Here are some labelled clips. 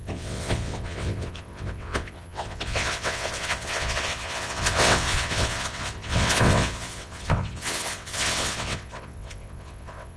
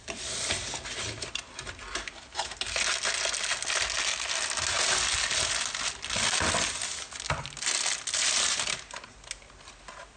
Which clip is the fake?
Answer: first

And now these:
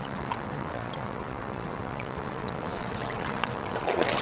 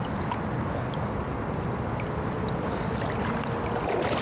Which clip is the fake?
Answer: first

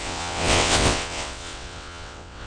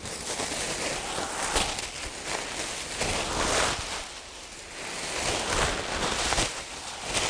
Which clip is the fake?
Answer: first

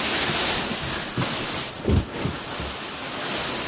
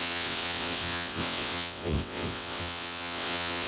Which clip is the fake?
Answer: second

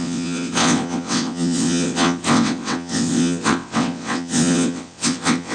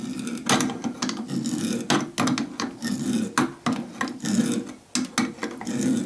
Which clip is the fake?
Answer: first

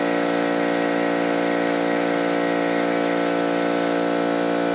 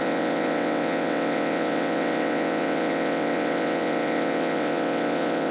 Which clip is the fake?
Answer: second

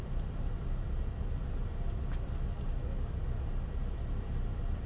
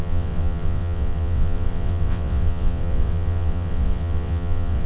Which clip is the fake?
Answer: second